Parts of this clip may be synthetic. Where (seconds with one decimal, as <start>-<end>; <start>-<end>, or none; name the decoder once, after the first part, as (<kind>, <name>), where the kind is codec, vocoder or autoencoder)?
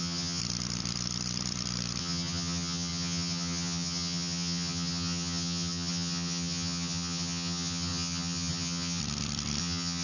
0.0-0.4 (vocoder, HiFi-GAN); 2.0-9.0; 9.6-10.0